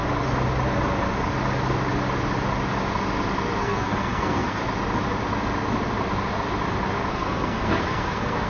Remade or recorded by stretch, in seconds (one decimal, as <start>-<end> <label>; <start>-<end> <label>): 0.0-3.6 recorded; 3.6-4.6 remade; 4.6-7.1 recorded; 7.1-8.5 remade